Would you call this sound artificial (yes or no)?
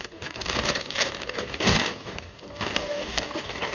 yes